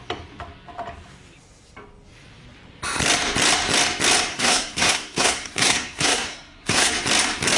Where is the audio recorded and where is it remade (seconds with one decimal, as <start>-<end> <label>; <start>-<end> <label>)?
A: 0.0-4.3 recorded; 4.3-6.9 remade; 6.9-7.6 recorded